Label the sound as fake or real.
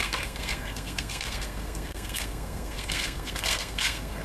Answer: fake